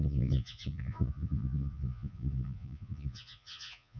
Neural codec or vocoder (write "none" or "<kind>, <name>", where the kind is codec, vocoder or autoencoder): vocoder, Vocos